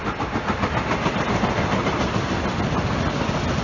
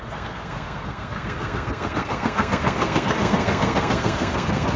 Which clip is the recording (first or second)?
first